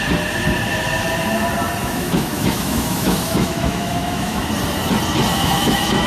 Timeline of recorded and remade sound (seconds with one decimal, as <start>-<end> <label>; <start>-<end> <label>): 0.0-1.8 recorded; 1.8-4.5 remade; 4.5-5.3 recorded; 5.3-6.1 remade